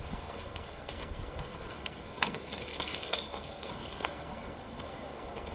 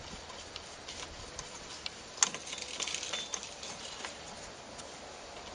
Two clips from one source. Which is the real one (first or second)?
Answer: second